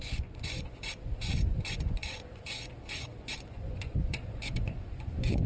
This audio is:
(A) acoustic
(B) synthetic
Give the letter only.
B